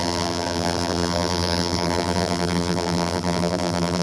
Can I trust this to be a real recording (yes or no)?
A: no